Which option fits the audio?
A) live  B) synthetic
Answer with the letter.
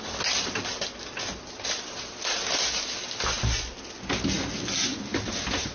A